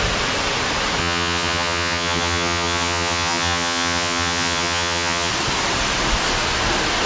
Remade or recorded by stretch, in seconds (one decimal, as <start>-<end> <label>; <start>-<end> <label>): 0.0-1.0 recorded; 1.0-5.3 remade; 5.3-7.1 recorded

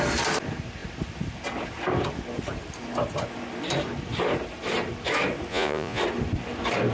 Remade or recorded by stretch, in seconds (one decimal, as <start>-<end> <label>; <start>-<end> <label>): 0.0-5.5 recorded; 5.5-6.0 remade; 6.0-6.9 recorded

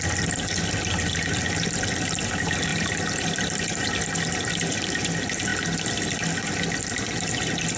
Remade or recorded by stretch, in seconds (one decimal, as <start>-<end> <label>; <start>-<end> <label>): 0.0-2.7 recorded; 2.7-4.0 remade; 4.0-7.8 recorded

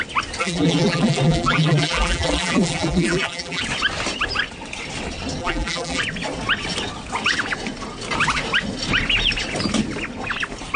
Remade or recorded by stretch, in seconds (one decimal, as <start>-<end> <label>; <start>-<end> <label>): 0.0-0.4 recorded; 0.4-3.6 remade; 3.6-5.4 recorded; 5.4-6.0 remade; 6.0-10.8 recorded

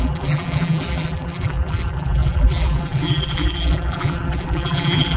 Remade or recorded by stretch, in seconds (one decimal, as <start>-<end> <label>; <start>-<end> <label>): 0.0-5.2 remade

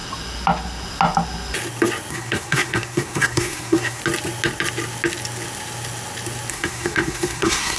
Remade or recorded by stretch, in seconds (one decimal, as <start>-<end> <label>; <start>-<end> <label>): 0.0-2.1 recorded; 2.1-4.0 remade; 4.0-6.5 recorded; 6.5-7.8 remade

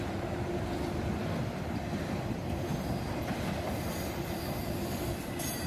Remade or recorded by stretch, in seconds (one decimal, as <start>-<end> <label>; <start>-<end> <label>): 0.0-1.2 recorded; 1.2-1.8 remade; 1.8-2.7 recorded; 2.7-5.2 remade; 5.2-5.7 recorded

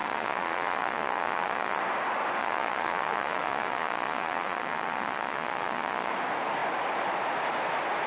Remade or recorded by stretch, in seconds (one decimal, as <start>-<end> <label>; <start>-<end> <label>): 0.0-1.8 remade; 1.8-2.4 recorded; 2.4-6.1 remade; 6.1-8.1 recorded